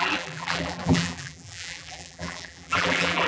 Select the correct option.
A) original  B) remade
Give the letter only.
B